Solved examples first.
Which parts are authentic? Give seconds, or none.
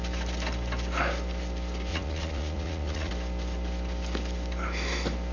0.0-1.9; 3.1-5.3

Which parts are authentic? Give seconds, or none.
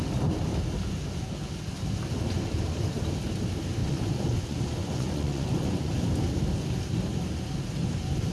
0.0-3.8; 5.9-8.3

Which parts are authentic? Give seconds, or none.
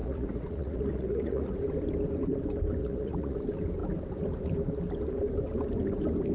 1.6-2.8; 3.4-6.3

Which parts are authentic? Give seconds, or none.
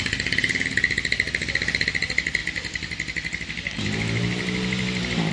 0.0-5.3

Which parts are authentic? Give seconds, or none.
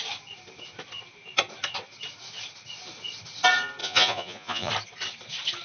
0.0-3.8; 4.7-5.6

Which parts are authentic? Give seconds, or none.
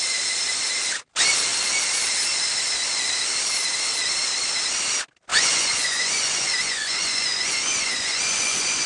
0.0-5.3